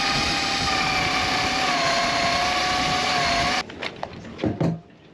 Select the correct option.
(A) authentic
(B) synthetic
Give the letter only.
A